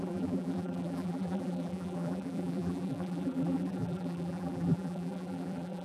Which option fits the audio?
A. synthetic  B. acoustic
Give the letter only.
A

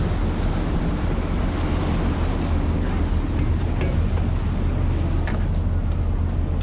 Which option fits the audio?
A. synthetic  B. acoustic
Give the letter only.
B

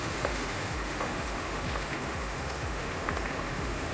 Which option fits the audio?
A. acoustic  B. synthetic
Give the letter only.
B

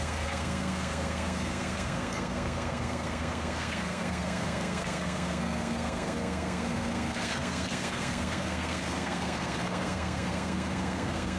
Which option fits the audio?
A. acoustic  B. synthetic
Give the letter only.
B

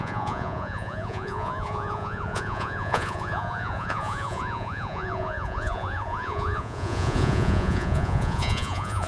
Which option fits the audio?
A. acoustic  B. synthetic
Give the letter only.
B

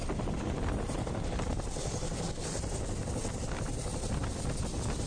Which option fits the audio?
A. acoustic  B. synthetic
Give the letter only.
A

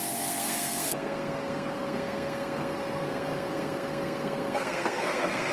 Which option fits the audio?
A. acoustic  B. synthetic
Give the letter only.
B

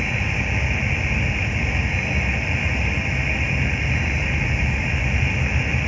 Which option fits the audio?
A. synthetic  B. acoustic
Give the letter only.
B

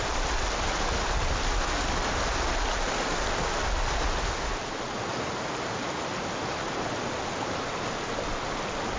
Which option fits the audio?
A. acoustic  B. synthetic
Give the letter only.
A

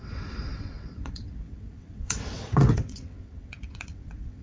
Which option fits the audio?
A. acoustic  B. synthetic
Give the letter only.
B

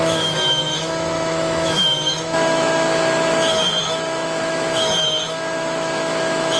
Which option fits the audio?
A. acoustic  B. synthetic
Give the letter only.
B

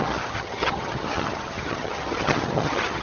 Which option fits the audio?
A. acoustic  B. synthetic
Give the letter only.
B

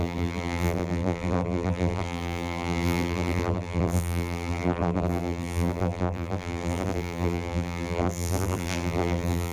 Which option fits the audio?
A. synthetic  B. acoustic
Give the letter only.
A